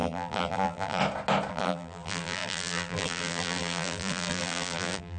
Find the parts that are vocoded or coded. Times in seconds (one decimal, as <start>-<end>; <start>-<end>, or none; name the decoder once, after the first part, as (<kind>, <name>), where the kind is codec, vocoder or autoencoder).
0.0-1.0 (vocoder, BigVGAN v2); 1.5-5.2